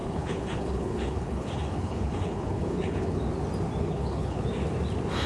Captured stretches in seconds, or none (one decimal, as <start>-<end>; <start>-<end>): 3.2-3.8; 4.5-5.3